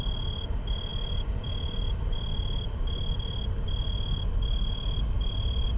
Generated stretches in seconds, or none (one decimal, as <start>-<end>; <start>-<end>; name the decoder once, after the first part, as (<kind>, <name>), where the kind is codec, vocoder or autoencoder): none